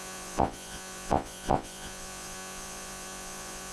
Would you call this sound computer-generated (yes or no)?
yes